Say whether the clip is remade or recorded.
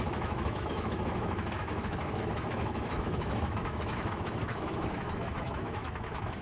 remade